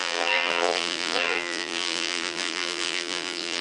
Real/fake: fake